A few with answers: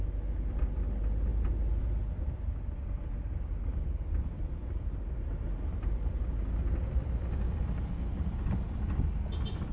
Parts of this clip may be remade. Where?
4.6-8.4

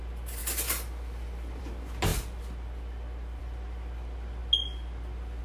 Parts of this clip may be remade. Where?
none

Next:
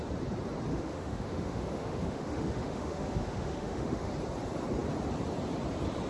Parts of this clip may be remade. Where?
0.7-4.1